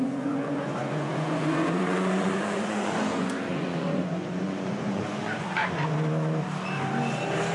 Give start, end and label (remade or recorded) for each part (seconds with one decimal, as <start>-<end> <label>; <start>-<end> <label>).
0.0-5.6 remade; 5.6-7.5 recorded